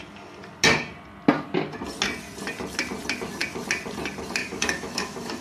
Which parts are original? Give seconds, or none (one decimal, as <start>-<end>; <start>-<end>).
0.0-4.4